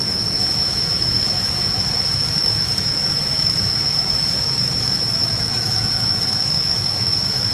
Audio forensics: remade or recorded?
remade